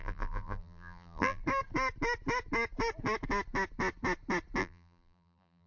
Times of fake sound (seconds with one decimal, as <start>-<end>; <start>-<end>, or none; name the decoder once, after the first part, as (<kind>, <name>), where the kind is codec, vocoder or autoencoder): 0.0-1.4 (vocoder, BigVGAN v2); 4.6-5.7